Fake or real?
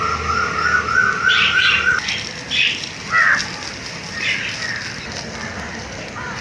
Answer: real